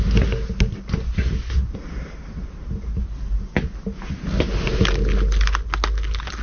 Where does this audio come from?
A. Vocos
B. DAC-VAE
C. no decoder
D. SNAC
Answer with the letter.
C